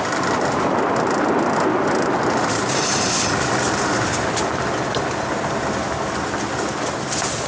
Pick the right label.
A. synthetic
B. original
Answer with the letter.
B